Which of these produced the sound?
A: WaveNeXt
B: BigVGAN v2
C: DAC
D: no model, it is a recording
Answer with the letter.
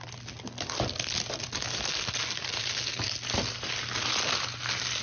D